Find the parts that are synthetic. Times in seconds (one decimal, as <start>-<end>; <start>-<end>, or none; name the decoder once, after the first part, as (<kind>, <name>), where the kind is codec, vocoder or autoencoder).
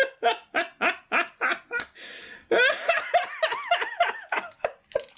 none